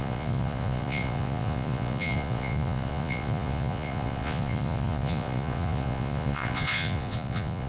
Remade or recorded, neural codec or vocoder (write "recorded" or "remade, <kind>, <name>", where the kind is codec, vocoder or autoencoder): remade, vocoder, Vocos